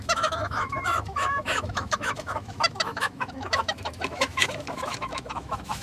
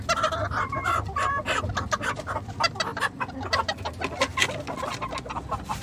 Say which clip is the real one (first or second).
second